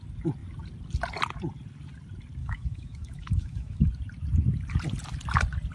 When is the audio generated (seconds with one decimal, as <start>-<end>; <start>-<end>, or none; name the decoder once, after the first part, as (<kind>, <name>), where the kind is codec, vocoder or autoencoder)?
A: 2.4-3.9 (autoencoder, DAC-VAE)